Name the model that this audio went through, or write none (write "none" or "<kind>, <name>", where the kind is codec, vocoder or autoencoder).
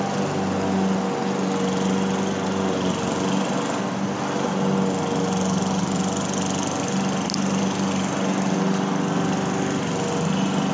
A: none